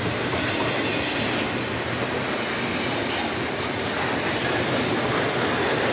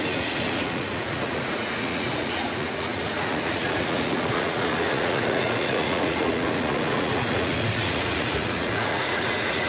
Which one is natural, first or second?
first